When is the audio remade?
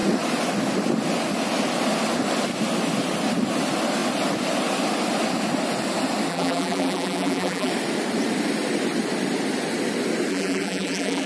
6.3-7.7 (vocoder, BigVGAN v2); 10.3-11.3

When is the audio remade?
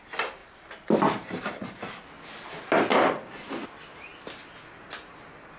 0.4-1.9 (vocoder, BigVGAN v2)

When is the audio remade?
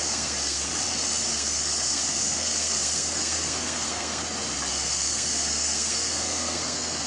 0.0-0.7 (codec, SNAC); 1.3-4.2; 4.7-7.1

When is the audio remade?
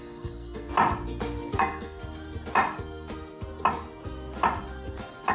0.0-0.7 (codec, SNAC); 1.6-2.0